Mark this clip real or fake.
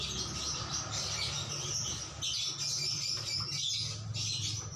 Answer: real